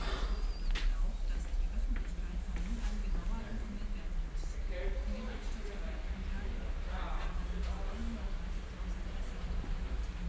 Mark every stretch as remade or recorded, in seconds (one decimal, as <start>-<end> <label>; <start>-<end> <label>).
0.0-10.3 recorded